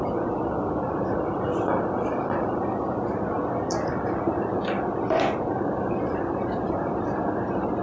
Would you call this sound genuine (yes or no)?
no